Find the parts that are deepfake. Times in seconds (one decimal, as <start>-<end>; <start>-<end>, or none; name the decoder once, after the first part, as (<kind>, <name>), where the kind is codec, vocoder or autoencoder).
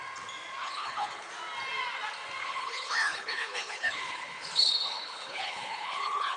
0.6-1.3 (codec, HILCodec); 2.4-6.4